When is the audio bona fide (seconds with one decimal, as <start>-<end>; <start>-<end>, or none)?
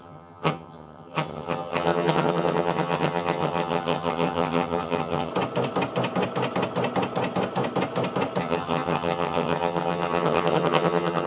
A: 5.3-8.4